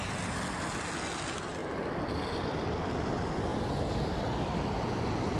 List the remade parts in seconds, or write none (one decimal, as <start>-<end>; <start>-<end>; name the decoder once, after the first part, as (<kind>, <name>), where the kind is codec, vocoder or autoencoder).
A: 3.5-4.1 (vocoder, BigVGAN v2)